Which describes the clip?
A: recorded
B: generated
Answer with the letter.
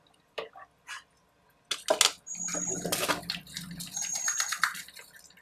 A